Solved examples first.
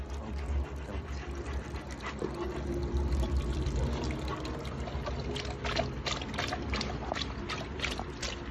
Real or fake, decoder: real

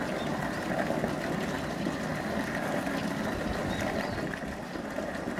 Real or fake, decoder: real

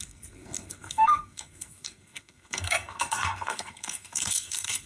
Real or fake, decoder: fake, codec, SNAC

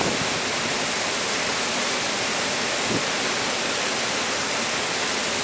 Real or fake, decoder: real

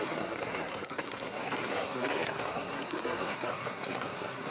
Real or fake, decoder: fake, codec, SNAC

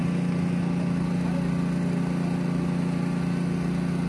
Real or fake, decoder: real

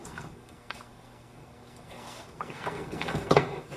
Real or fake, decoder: fake, codec, SNAC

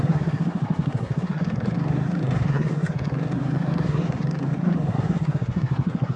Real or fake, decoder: fake, codec, SNAC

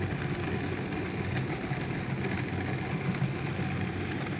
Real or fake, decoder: real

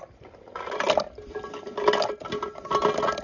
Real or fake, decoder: real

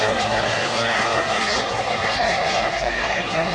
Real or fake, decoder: fake, codec, SNAC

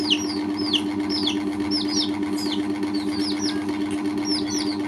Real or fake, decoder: real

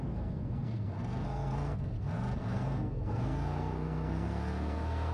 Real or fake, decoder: fake, codec, SNAC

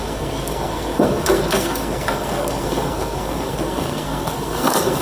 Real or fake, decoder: fake, codec, SNAC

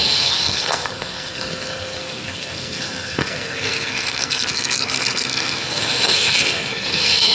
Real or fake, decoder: fake, codec, SNAC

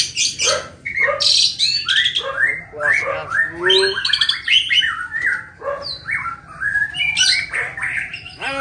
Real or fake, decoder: real